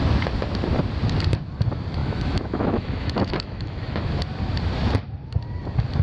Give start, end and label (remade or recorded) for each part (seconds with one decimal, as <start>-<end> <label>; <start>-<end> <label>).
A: 0.0-2.0 recorded; 2.0-4.1 remade; 4.1-6.0 recorded